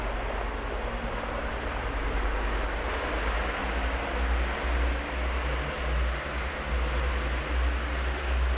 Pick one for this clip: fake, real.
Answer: real